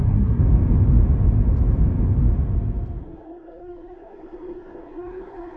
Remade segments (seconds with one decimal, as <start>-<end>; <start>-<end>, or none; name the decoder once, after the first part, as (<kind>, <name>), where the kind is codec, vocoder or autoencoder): 0.0-0.4 (codec, SNAC); 3.0-5.6